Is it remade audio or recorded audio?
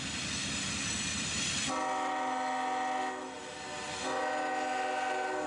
recorded